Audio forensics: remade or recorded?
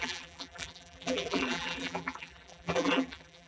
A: remade